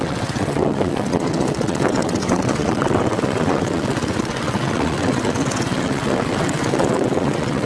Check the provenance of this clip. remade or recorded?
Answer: remade